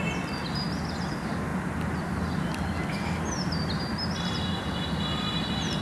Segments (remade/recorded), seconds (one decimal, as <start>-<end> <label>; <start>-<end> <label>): 0.0-5.8 recorded